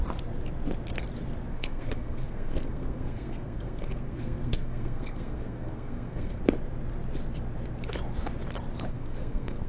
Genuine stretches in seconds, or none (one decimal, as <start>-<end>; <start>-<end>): 0.0-1.5; 6.4-8.9